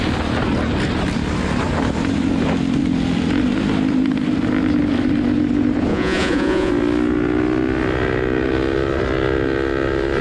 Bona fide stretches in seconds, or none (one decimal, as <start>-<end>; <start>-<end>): 0.0-5.9; 6.7-10.2